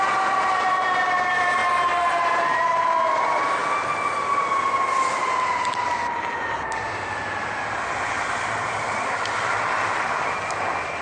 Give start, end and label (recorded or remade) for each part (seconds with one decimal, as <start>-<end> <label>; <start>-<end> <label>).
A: 0.0-1.6 remade; 1.6-2.1 recorded; 2.1-3.6 remade; 3.6-8.1 recorded; 8.1-11.0 remade